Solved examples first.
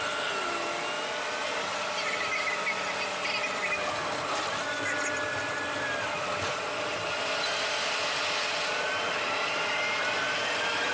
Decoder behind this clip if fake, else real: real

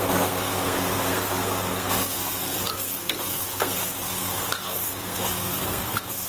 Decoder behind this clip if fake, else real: fake, codec, SNAC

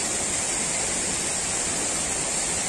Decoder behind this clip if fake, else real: real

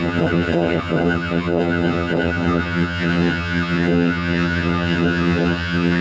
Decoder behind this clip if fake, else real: fake, vocoder, HiFi-GAN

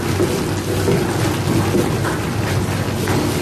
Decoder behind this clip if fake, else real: real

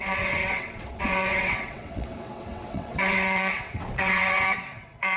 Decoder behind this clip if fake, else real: fake, vocoder, WaveNeXt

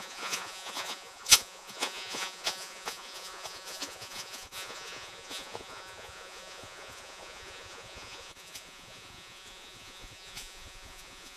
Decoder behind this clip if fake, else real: fake, vocoder, Vocos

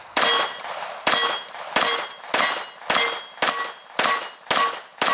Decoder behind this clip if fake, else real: real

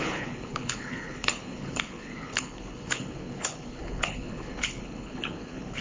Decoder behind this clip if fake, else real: fake, codec, HILCodec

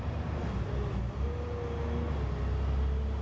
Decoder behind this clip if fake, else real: real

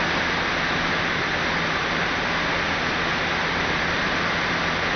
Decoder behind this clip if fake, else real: real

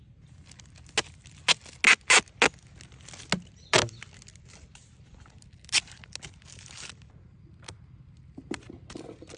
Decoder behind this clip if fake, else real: real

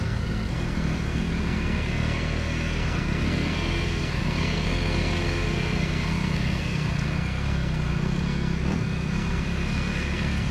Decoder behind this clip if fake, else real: fake, codec, SNAC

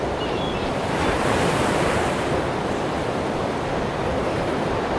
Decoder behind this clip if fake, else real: fake, vocoder, BigVGAN v2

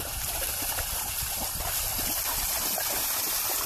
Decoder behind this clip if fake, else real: real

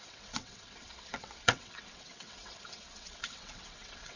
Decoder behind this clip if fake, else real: fake, vocoder, WaveNeXt